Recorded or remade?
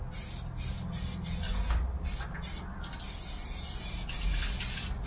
recorded